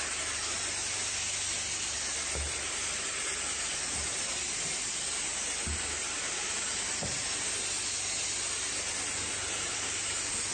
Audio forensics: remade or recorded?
recorded